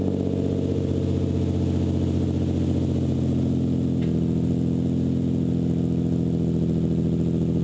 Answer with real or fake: real